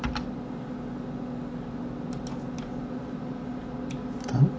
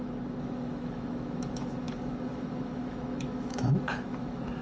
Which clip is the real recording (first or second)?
first